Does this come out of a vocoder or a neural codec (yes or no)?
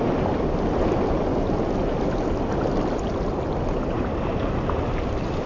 no